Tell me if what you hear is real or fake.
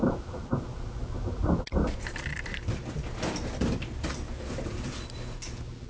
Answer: real